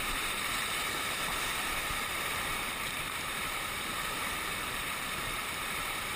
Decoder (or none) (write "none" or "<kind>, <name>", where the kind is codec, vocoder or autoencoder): vocoder, BigVGAN v2